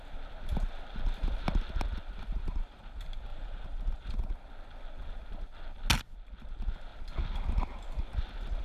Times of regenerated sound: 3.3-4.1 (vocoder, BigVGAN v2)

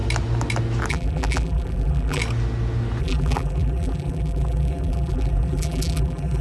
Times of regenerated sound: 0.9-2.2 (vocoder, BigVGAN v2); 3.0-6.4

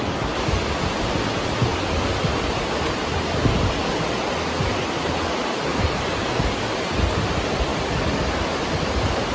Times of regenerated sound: 5.7-6.3 (vocoder, BigVGAN v2)

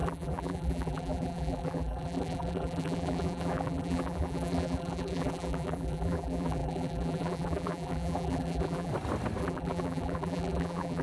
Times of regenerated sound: 0.0-8.9 (vocoder, BigVGAN v2); 9.4-11.0

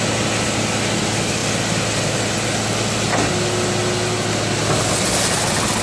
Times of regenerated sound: none

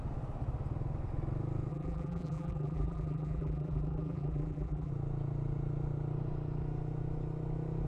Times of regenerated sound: 1.7-4.9 (vocoder, BigVGAN v2)

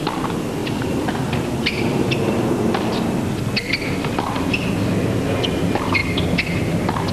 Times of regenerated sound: 0.6-2.5 (vocoder, BigVGAN v2); 6.0-7.1